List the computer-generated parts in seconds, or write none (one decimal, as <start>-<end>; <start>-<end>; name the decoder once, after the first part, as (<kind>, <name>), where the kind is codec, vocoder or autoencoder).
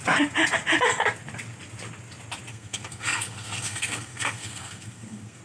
2.5-5.4 (codec, SNAC)